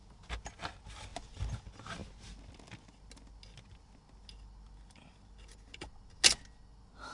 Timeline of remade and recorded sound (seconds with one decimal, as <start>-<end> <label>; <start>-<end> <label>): 0.0-7.1 recorded